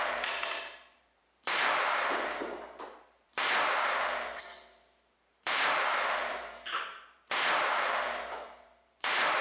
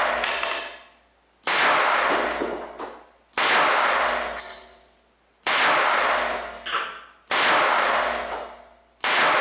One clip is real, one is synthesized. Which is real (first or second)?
second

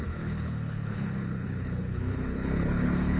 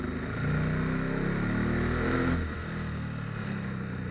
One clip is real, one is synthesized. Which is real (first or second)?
second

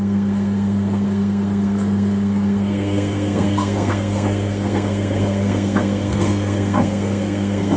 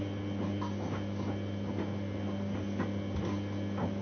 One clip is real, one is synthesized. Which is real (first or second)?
second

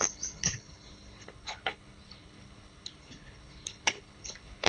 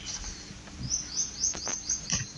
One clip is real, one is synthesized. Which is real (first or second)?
second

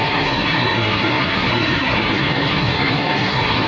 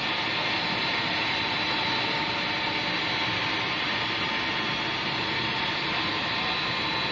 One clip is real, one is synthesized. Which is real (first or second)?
second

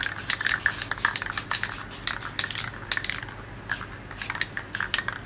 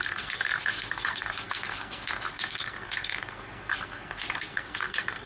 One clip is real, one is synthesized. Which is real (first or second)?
first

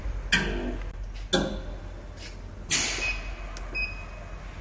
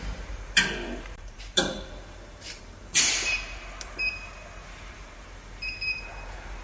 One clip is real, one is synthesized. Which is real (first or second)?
first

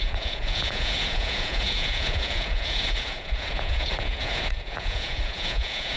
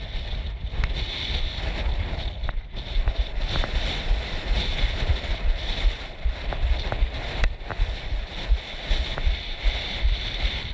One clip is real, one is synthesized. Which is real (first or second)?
second